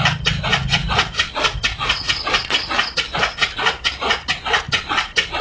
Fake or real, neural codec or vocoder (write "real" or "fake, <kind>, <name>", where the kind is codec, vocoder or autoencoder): real